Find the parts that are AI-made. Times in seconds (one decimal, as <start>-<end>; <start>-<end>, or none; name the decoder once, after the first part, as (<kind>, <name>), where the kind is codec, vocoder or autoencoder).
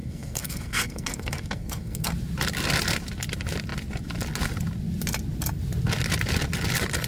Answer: 0.0-2.1 (codec, SNAC)